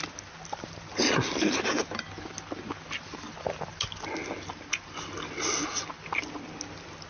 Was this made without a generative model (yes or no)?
yes